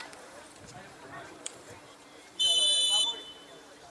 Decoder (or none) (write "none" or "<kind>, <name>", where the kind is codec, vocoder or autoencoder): vocoder, BigVGAN v2